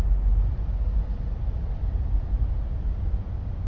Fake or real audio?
real